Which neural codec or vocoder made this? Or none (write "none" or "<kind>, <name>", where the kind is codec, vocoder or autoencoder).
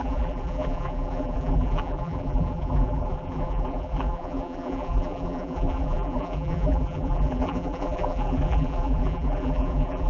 vocoder, BigVGAN v2